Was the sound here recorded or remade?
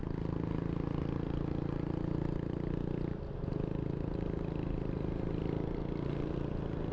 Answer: recorded